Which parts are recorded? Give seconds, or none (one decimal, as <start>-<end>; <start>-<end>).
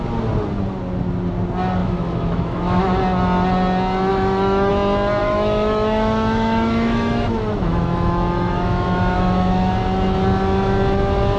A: 0.0-1.8; 2.8-4.1; 4.7-5.2; 9.7-11.4